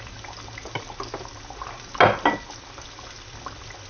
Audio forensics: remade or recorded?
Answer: recorded